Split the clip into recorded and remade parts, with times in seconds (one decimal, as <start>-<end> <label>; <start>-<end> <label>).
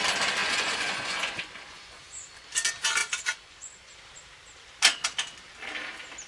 0.0-0.4 recorded; 0.4-2.5 remade; 2.5-3.0 recorded; 3.0-3.9 remade; 3.9-6.3 recorded